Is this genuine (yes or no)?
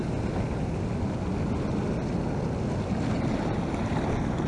yes